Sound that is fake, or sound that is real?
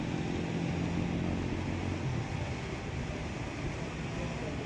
real